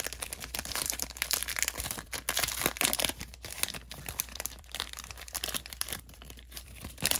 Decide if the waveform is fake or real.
fake